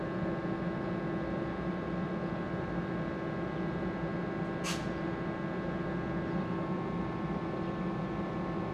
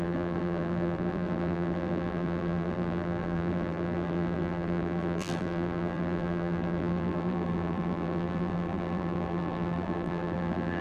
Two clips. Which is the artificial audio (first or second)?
second